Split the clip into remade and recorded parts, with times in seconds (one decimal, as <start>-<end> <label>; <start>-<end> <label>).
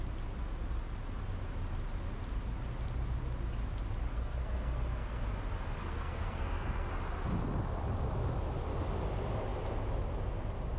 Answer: 0.0-4.1 recorded; 4.1-5.2 remade; 5.2-5.8 recorded; 5.8-6.9 remade; 6.9-10.8 recorded